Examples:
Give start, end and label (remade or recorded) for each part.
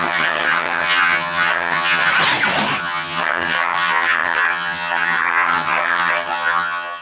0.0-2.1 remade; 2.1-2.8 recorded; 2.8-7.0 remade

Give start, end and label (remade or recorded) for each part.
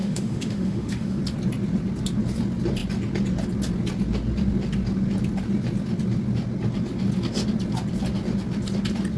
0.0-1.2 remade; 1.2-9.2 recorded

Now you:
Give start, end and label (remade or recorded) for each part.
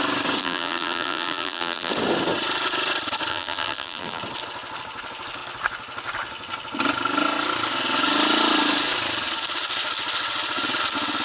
0.0-0.4 recorded; 0.4-1.9 remade; 1.9-3.3 recorded; 3.3-4.2 remade; 4.2-11.2 recorded